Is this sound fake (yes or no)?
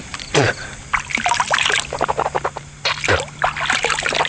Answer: no